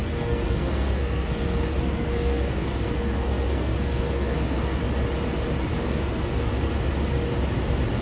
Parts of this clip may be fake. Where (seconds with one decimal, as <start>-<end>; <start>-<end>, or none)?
0.0-4.8; 5.7-6.7